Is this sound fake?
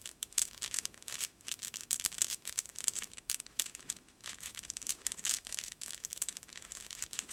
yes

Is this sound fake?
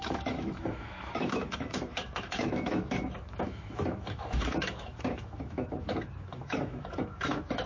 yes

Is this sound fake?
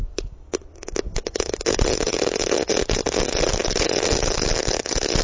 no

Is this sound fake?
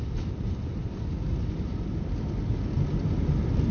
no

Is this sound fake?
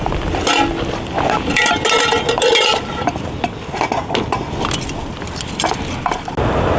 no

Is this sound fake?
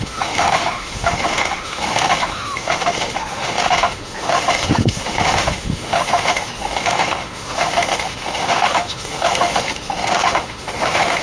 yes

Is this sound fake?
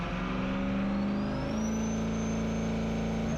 no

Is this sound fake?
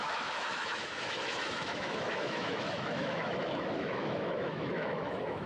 yes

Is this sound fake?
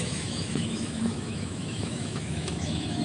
yes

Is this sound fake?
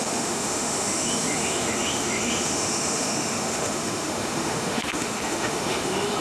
yes